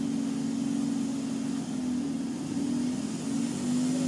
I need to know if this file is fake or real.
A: real